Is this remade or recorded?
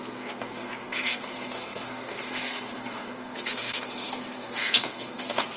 remade